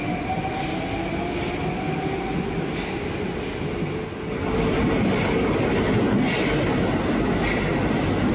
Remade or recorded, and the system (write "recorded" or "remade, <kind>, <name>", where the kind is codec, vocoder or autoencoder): recorded